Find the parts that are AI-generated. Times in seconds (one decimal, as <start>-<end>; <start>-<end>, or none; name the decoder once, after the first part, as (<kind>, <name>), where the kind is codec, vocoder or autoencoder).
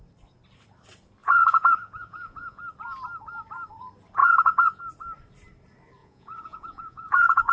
1.2-2.6 (vocoder, Vocos); 4.2-4.8; 6.0-7.5